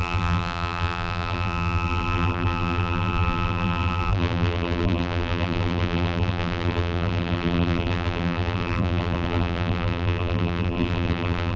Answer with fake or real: fake